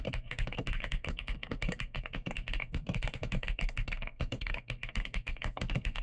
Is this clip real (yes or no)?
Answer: no